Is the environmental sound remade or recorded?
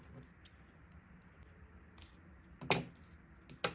recorded